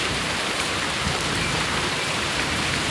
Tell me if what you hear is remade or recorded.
remade